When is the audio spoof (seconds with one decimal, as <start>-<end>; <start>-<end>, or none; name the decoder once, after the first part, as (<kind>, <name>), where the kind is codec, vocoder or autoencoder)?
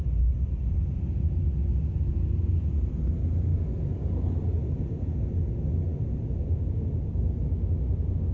none